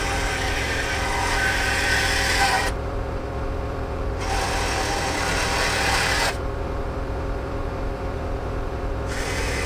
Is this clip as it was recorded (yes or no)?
no